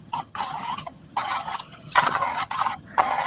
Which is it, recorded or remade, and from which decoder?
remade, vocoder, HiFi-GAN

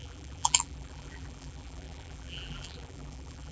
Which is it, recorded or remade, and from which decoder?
remade, vocoder, BigVGAN v2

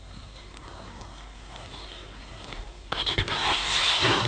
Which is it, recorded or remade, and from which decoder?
remade, codec, SNAC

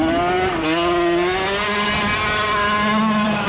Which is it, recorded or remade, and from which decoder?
recorded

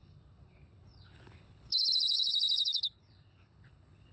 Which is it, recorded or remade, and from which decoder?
remade, codec, HILCodec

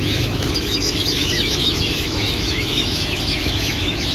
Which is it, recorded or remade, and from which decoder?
remade, autoencoder, DAC-VAE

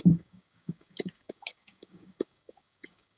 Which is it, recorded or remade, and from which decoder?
remade, codec, DAC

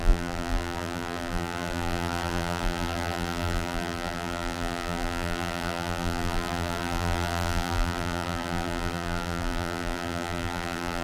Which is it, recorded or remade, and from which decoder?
remade, vocoder, BigVGAN v2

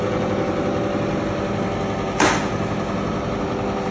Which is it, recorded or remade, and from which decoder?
recorded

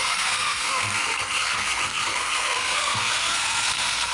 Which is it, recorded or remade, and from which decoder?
remade, codec, SNAC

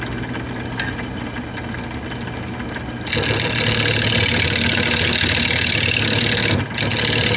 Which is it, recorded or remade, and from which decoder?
recorded